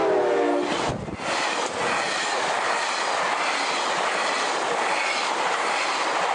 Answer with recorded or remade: recorded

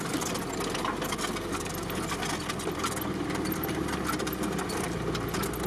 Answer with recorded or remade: recorded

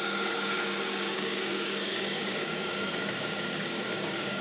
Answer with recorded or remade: remade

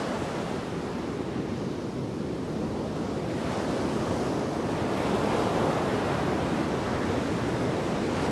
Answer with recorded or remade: recorded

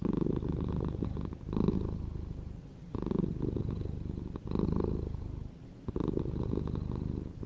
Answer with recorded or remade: recorded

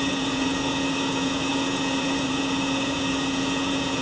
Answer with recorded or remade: remade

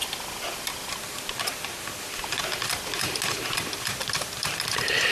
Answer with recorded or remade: recorded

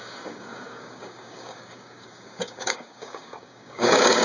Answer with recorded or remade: remade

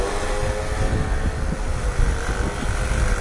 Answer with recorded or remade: recorded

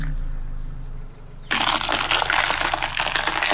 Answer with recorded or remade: recorded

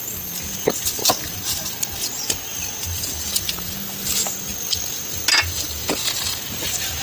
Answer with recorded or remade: recorded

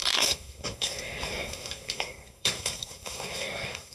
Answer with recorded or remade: remade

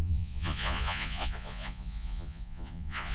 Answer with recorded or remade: remade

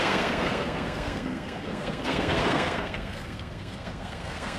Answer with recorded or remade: remade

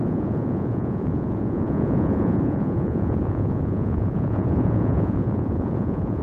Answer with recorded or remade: remade